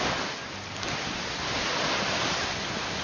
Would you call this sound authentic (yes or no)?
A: yes